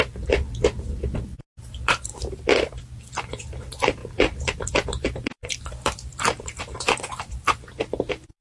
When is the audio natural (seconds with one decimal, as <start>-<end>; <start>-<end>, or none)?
0.0-2.1; 2.7-4.0